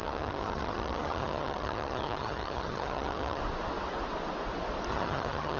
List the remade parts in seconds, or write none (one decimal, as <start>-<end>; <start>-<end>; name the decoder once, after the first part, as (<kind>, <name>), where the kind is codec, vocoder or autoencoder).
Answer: 0.0-3.4 (vocoder, HiFi-GAN); 4.9-5.6